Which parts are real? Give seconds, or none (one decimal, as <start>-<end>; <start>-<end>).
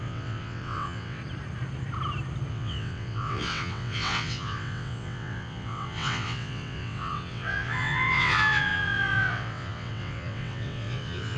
1.2-2.5